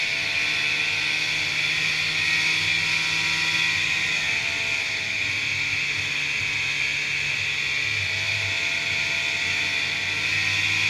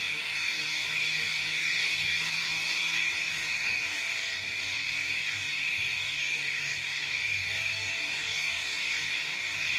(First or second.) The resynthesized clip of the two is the second